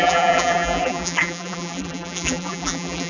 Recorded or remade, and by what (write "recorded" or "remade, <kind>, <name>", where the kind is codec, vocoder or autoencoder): remade, vocoder, BigVGAN v2